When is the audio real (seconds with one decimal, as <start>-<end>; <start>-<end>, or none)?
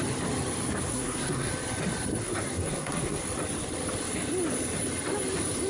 0.0-0.9; 1.5-2.2; 3.2-5.7